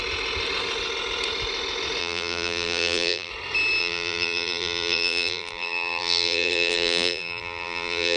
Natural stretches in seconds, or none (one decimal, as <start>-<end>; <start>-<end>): 0.0-2.0; 3.3-3.8